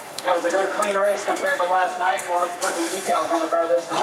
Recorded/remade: remade